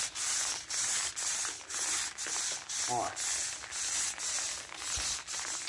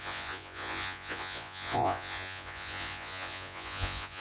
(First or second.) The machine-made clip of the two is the second